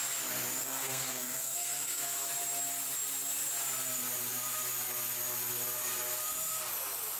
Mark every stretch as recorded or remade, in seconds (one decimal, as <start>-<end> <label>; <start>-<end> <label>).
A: 0.0-0.6 recorded; 0.6-2.3 remade; 2.3-7.2 recorded